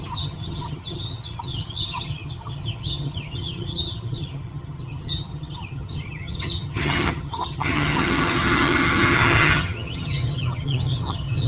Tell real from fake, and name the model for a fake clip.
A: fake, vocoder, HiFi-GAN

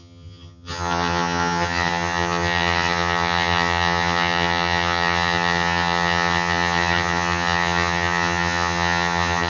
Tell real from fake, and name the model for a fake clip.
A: fake, vocoder, HiFi-GAN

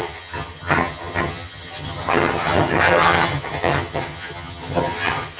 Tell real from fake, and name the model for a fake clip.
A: fake, vocoder, HiFi-GAN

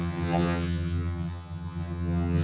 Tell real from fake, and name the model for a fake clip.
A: fake, vocoder, HiFi-GAN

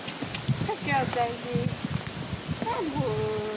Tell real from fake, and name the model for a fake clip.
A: real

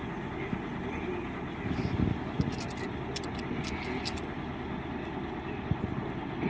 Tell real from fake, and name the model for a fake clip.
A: real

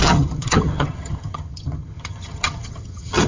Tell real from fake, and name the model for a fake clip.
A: fake, vocoder, HiFi-GAN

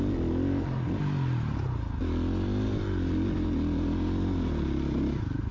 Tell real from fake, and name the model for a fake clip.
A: real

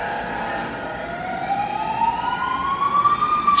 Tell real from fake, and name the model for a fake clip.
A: real